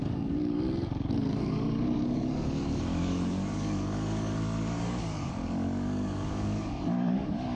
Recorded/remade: remade